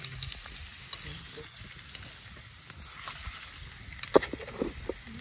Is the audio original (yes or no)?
yes